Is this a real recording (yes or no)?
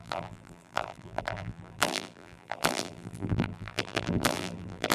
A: no